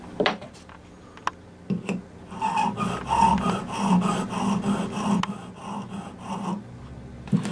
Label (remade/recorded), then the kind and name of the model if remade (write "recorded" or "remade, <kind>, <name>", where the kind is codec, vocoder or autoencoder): recorded